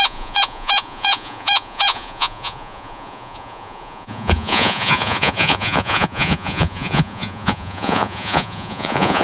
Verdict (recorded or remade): remade